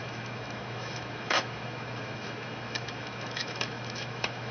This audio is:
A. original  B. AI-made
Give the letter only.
B